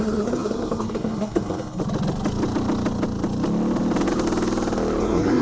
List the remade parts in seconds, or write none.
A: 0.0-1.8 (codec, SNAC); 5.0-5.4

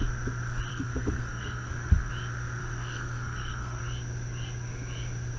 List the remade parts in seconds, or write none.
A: 0.7-2.1 (codec, SNAC); 2.6-3.8

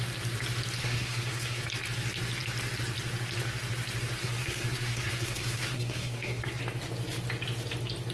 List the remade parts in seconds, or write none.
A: 0.8-1.6 (codec, SNAC); 4.2-6.6

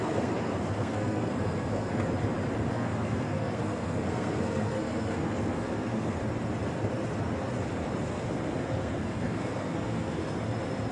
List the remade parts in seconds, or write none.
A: 0.0-1.9 (codec, SNAC); 2.7-6.2; 8.1-10.2